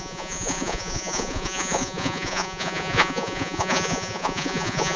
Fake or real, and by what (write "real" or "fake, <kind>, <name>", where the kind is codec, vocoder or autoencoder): fake, vocoder, Vocos